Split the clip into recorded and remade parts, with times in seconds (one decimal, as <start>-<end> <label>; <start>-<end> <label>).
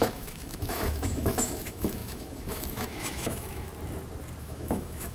0.0-3.7 remade; 3.7-4.4 recorded; 4.4-5.1 remade